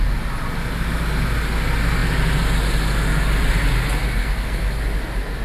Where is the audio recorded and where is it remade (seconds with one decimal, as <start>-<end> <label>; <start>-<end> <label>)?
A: 0.0-4.2 recorded; 4.2-4.8 remade; 4.8-5.4 recorded